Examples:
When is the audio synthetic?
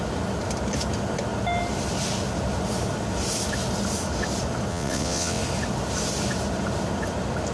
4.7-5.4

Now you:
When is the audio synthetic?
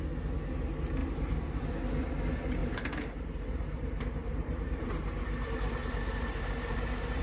1.0-1.7; 2.6-7.2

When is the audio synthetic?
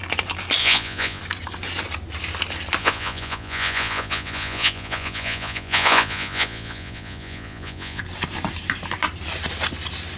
0.6-1.2; 2.8-8.0